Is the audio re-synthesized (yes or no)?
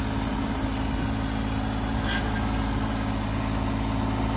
no